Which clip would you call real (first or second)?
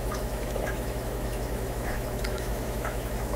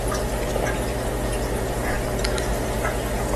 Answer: second